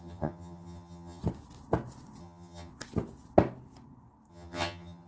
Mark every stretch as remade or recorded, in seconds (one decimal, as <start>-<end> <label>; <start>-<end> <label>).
0.0-1.2 remade; 1.2-2.2 recorded; 2.2-2.7 remade; 2.7-4.3 recorded; 4.3-5.1 remade

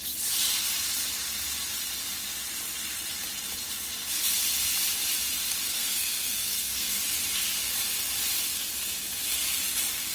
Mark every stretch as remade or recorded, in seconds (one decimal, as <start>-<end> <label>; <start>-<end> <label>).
0.0-5.7 recorded; 5.7-7.0 remade; 7.0-10.1 recorded

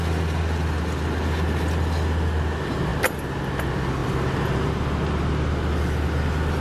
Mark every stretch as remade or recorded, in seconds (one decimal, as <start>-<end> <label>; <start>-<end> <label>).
0.0-4.0 recorded; 4.0-4.7 remade; 4.7-6.6 recorded

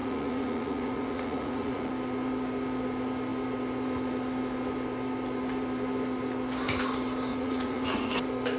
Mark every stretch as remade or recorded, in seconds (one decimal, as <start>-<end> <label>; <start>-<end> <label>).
0.0-1.9 remade; 1.9-7.3 recorded; 7.3-8.1 remade; 8.1-8.6 recorded

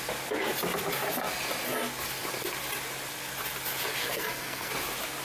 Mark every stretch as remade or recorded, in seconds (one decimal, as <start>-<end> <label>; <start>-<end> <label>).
0.0-4.0 recorded; 4.0-4.7 remade; 4.7-5.2 recorded

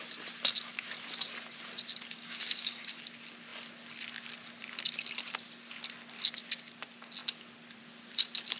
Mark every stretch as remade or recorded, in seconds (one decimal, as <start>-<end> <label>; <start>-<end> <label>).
0.0-2.1 recorded; 2.1-3.0 remade; 3.0-8.6 recorded

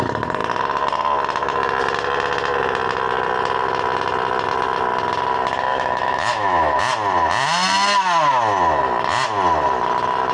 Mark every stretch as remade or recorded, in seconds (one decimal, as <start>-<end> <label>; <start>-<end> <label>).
0.0-5.7 recorded; 5.7-6.8 remade; 6.8-10.3 recorded

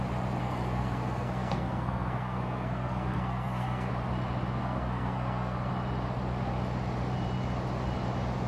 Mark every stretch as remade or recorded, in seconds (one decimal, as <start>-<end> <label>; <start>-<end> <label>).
0.0-0.4 recorded; 0.4-3.9 remade; 3.9-4.6 recorded; 4.6-5.7 remade; 5.7-8.5 recorded